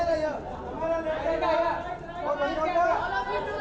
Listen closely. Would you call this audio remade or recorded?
recorded